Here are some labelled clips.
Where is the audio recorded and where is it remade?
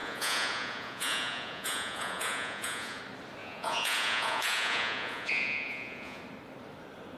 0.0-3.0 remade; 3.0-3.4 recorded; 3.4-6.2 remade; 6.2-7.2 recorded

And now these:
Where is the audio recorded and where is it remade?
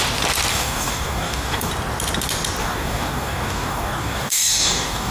0.0-0.5 recorded; 0.5-1.7 remade; 1.7-2.6 recorded; 2.6-5.1 remade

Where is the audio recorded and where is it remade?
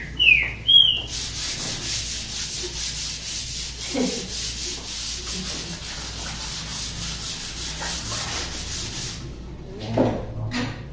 0.0-10.9 recorded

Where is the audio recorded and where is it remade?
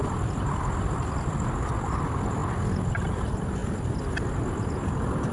0.0-5.3 recorded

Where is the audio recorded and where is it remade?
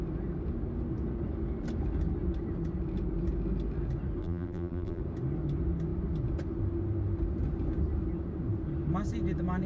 0.0-4.2 recorded; 4.2-5.0 remade; 5.0-9.7 recorded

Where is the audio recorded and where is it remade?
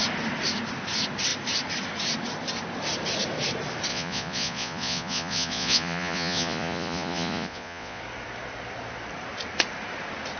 0.0-3.9 recorded; 3.9-8.0 remade; 8.0-10.4 recorded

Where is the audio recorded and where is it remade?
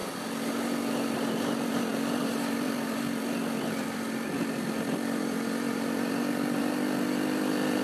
0.0-0.5 recorded; 0.5-7.8 remade